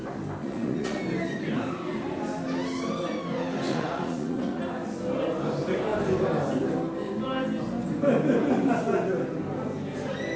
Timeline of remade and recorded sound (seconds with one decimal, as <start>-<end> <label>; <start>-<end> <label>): 0.0-0.4 recorded; 0.4-1.0 remade; 1.0-3.7 recorded; 3.7-4.6 remade; 4.6-10.4 recorded